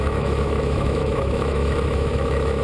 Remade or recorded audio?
remade